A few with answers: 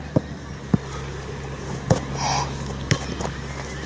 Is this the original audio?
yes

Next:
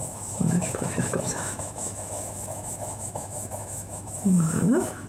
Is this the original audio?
no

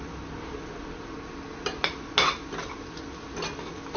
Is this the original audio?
yes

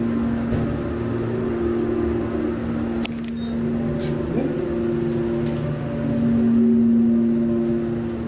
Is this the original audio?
yes